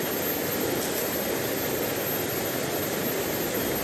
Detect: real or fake real